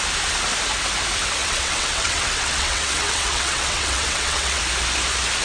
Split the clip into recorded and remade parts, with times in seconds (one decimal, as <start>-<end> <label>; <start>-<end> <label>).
0.0-1.4 recorded; 1.4-4.6 remade; 4.6-5.4 recorded